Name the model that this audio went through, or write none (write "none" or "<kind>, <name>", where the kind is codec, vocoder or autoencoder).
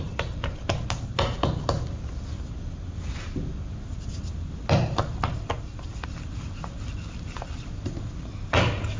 none